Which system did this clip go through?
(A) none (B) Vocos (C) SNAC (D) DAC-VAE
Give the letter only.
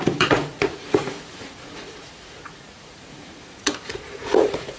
B